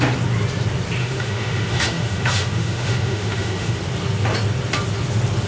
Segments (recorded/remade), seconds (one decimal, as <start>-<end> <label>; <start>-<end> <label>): 0.0-1.0 recorded; 1.0-3.8 remade; 3.8-5.5 recorded